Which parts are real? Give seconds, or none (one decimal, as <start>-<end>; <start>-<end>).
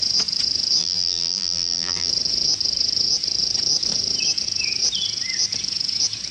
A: 0.0-0.8; 2.1-6.3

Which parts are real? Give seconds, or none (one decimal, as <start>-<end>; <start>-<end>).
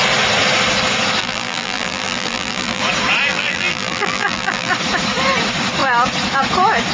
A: 0.0-1.2; 2.8-3.3; 4.7-6.9